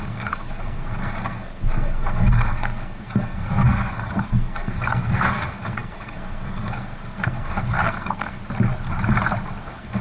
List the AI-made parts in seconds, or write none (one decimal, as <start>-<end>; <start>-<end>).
0.0-8.4; 9.6-10.0